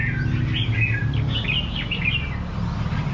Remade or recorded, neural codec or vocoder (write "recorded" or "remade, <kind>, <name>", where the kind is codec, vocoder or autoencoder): recorded